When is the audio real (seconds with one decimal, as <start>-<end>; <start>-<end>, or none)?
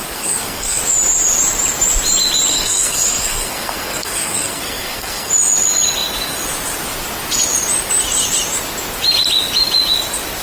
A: 0.8-2.5; 5.3-10.4